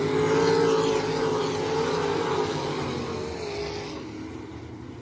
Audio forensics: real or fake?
real